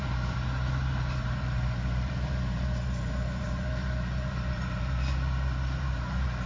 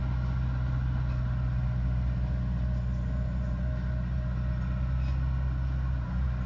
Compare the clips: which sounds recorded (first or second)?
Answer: second